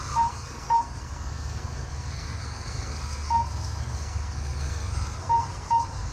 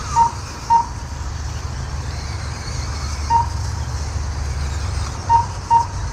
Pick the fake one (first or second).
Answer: first